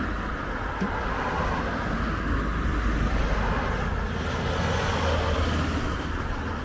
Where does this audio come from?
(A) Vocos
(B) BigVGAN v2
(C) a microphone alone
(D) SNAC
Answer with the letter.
C